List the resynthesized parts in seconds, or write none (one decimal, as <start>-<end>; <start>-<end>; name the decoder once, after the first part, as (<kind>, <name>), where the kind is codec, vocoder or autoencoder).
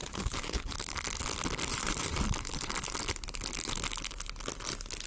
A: 0.0-0.9 (vocoder, BigVGAN v2); 1.7-2.9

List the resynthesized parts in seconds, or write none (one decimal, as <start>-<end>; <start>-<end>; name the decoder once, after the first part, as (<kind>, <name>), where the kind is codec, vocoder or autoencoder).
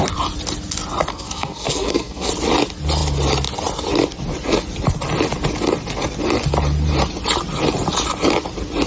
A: 1.1-2.3 (codec, SNAC)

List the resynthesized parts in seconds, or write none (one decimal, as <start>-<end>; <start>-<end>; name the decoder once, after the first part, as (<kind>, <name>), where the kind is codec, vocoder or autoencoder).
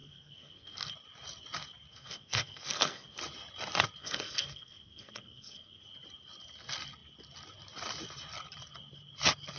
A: 0.0-0.9 (codec, SNAC); 1.9-3.2; 4.0-5.8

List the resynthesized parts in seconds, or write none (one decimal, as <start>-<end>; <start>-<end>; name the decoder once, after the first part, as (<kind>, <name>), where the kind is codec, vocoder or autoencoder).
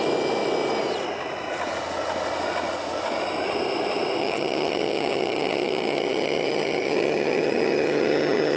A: 4.2-8.6 (vocoder, HiFi-GAN)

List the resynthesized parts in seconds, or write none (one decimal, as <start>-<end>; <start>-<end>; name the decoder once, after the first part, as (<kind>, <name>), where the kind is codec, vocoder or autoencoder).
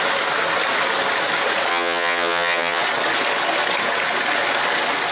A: 1.7-2.8 (vocoder, HiFi-GAN)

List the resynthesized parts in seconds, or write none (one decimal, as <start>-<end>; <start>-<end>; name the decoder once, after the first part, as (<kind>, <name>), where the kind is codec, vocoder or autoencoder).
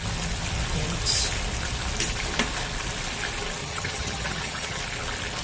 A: 3.6-4.8 (vocoder, HiFi-GAN)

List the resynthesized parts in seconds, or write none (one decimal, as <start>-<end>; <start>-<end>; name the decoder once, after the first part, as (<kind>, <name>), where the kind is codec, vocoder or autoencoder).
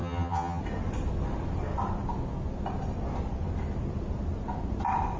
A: 0.0-0.6 (vocoder, HiFi-GAN)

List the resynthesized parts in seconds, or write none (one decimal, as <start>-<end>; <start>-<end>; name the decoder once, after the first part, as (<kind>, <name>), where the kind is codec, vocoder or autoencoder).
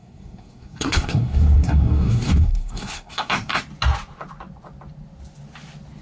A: 0.0-3.6 (codec, SNAC)